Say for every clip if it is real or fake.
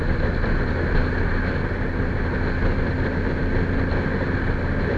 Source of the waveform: real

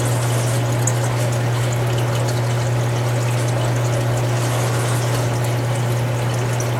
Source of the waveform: real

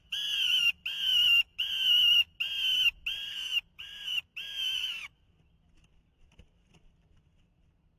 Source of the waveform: real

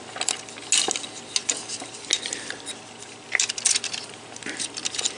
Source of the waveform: real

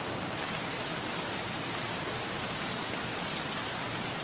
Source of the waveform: real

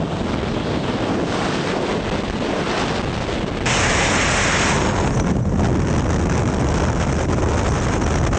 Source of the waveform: real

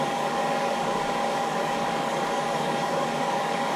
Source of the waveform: fake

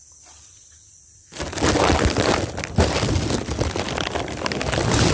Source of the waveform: real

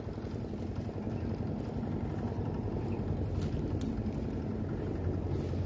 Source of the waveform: real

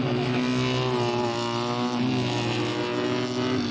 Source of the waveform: real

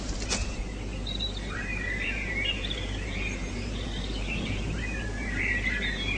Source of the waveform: fake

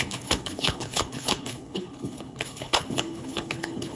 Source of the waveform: fake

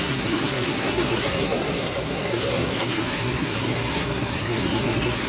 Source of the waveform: fake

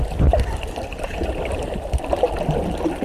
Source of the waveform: real